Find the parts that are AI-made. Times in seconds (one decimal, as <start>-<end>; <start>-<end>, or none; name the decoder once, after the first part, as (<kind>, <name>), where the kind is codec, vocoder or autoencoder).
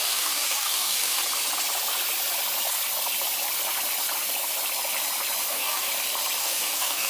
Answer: 0.0-1.2 (codec, DAC); 5.5-5.9; 6.4-7.1